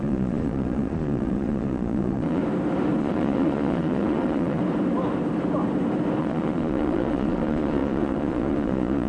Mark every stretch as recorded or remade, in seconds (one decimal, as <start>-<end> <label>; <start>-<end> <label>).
0.0-2.4 remade; 2.4-3.0 recorded; 3.0-4.6 remade; 4.6-6.2 recorded; 6.2-9.1 remade